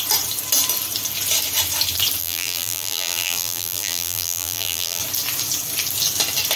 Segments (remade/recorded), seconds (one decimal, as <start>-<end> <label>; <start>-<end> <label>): 0.0-2.2 recorded; 2.2-5.0 remade; 5.0-6.6 recorded